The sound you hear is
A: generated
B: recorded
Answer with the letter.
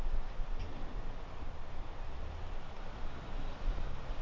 B